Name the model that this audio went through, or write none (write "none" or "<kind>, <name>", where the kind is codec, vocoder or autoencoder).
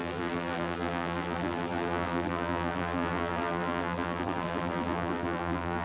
vocoder, BigVGAN v2